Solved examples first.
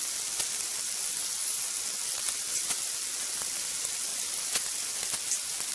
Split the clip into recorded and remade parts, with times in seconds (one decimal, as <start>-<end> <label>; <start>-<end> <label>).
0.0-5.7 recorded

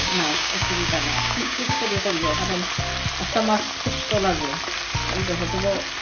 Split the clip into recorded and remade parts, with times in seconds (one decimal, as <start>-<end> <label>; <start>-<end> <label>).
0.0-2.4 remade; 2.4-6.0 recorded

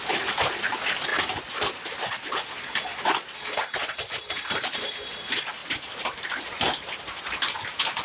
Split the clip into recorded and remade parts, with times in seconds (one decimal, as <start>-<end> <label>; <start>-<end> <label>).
0.0-8.0 recorded

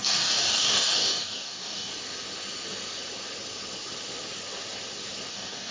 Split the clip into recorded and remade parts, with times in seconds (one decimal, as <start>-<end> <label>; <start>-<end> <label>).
0.0-1.9 remade; 1.9-5.3 recorded; 5.3-5.7 remade

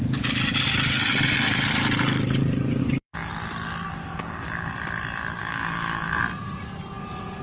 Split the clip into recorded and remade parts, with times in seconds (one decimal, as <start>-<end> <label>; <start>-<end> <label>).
0.0-2.8 recorded; 2.8-3.3 remade; 3.3-4.0 recorded; 4.0-4.7 remade; 4.7-5.4 recorded; 5.4-6.2 remade; 6.2-7.4 recorded

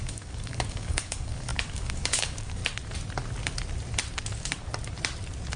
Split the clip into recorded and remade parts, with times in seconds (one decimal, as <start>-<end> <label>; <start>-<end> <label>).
0.0-2.6 remade; 2.6-5.6 recorded